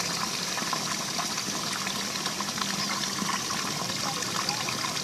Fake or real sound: real